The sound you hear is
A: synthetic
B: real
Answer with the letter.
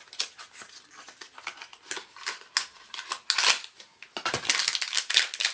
B